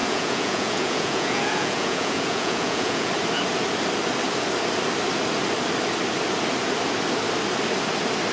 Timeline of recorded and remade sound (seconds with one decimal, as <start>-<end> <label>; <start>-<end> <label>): 0.0-3.1 remade; 3.1-8.3 recorded

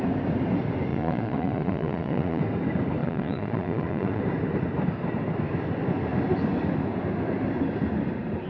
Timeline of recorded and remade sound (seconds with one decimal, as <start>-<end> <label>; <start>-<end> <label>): 0.0-0.9 recorded; 0.9-2.4 remade; 2.4-3.0 recorded; 3.0-4.2 remade; 4.2-8.5 recorded

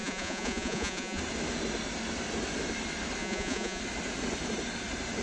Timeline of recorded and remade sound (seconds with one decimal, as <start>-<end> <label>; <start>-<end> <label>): 0.0-1.2 remade; 1.2-3.2 recorded; 3.2-3.8 remade; 3.8-5.2 recorded

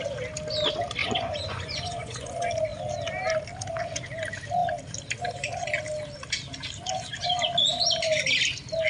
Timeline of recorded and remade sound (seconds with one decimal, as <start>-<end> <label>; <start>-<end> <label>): 0.0-1.0 recorded; 1.0-2.3 remade; 2.3-8.9 recorded

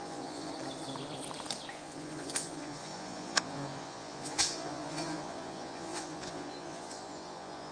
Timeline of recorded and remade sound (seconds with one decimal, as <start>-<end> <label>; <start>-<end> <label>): 0.0-0.5 remade; 0.5-1.7 recorded; 1.7-7.7 remade

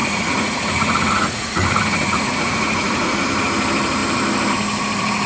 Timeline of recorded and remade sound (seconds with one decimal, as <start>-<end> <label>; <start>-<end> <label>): 0.0-3.2 remade; 3.2-5.3 recorded

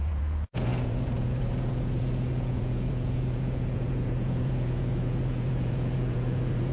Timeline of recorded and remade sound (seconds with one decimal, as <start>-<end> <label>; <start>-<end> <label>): 0.0-6.7 remade